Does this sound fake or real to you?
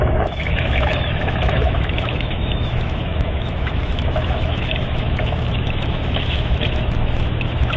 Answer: fake